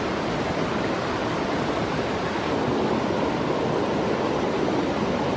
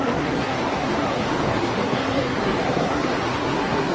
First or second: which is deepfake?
second